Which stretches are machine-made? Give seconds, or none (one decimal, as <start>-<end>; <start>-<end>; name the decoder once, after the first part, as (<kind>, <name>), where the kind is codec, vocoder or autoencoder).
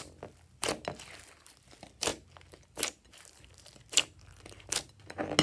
none